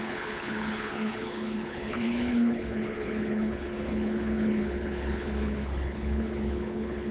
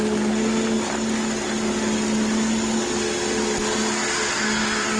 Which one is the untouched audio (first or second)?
second